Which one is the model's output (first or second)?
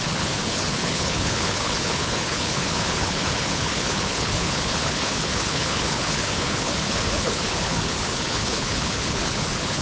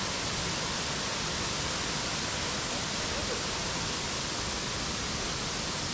first